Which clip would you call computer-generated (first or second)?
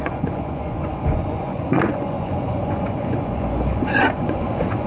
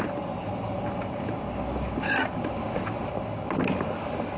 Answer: first